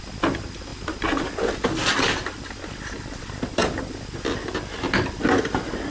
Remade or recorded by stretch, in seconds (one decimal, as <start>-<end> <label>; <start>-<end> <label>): 0.0-5.9 recorded